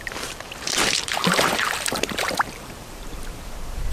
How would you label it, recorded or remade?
remade